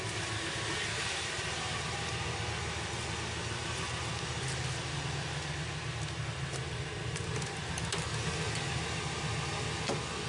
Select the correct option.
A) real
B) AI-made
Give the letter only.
A